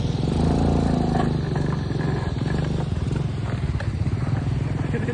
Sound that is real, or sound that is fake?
real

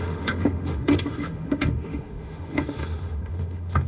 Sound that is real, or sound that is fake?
fake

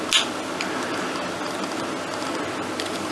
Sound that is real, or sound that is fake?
real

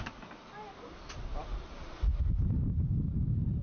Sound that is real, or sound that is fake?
real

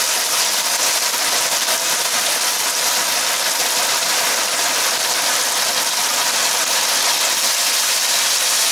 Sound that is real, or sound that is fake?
real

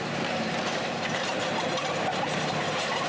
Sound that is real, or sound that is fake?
fake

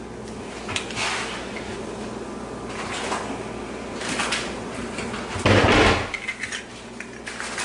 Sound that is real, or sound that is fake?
real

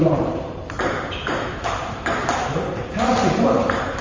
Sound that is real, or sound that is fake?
fake